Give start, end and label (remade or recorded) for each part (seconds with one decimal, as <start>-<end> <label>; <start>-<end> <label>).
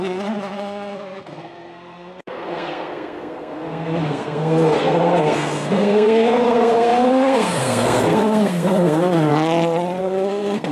0.0-9.3 remade; 9.3-10.0 recorded; 10.0-10.7 remade